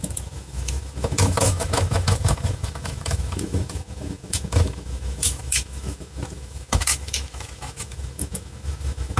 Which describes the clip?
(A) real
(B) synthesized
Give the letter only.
B